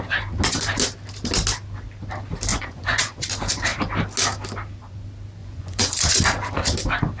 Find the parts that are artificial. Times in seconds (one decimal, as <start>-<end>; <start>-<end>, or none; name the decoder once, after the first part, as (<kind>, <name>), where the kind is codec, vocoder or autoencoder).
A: 2.5-3.3 (vocoder, Vocos); 5.4-6.0